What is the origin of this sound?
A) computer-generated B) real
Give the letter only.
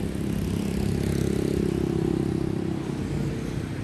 B